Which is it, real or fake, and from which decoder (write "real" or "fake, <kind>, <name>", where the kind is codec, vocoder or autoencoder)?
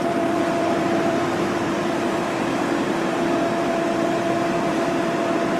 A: fake, vocoder, BigVGAN v2